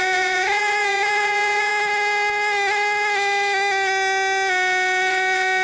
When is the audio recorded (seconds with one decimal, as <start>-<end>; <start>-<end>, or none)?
1.7-5.1